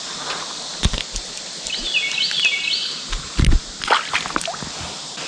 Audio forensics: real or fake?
real